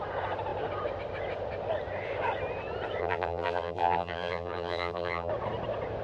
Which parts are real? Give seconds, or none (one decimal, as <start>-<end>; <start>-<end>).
0.0-3.0; 5.3-6.0